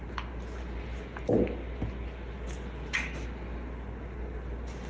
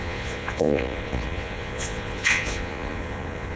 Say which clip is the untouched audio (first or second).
first